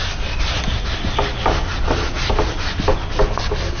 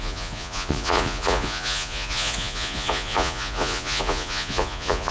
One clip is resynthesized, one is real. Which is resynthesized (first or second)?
second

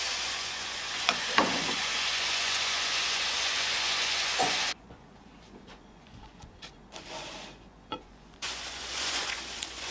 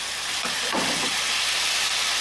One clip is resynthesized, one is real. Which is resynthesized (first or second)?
first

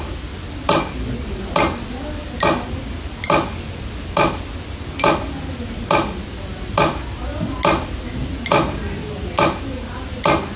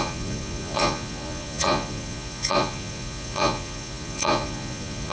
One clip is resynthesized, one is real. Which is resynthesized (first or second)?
second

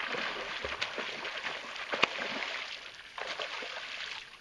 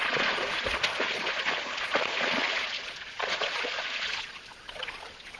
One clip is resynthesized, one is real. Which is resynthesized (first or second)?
second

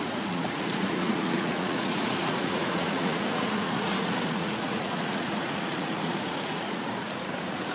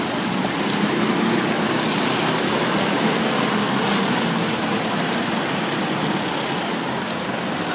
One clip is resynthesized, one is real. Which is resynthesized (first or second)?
first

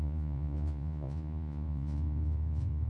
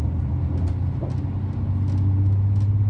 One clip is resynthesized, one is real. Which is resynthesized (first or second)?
first